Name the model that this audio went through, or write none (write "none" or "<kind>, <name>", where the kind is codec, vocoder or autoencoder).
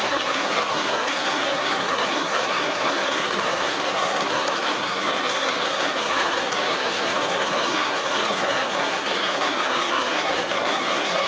codec, SNAC